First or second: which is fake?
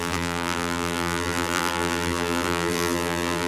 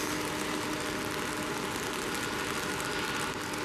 first